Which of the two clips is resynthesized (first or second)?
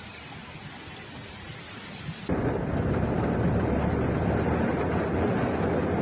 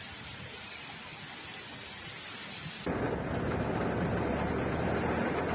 first